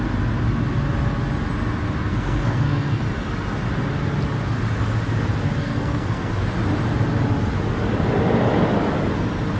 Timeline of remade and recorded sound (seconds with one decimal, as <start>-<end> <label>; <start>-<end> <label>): 0.0-2.1 recorded; 2.1-3.0 remade; 3.0-5.6 recorded; 5.6-6.3 remade; 6.3-9.6 recorded